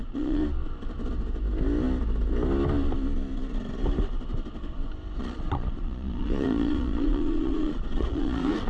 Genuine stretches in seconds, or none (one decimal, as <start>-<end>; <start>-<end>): 0.4-5.2